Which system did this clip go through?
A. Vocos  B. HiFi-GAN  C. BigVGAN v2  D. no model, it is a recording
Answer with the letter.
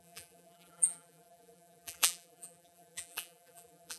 C